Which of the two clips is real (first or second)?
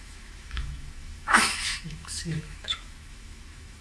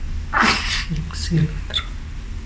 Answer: second